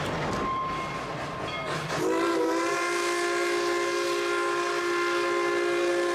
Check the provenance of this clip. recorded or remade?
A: recorded